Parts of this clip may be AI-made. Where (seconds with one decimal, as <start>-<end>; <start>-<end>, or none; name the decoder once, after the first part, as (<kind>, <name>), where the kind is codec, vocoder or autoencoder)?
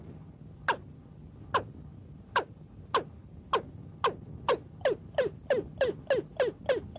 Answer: 1.9-2.9 (vocoder, BigVGAN v2)